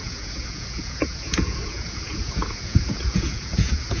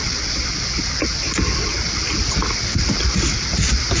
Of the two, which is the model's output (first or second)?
first